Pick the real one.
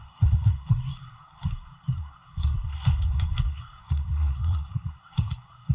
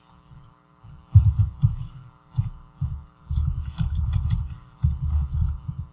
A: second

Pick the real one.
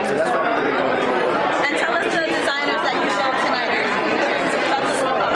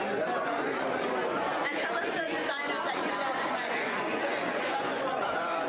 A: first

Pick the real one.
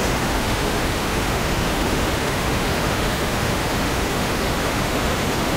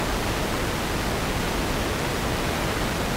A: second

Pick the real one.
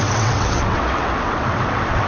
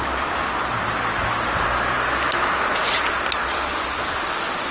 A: second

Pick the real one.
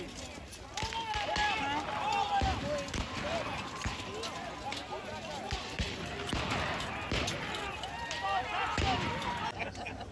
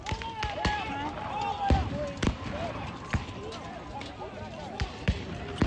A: first